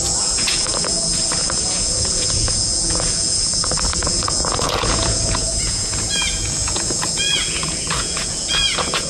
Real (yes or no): no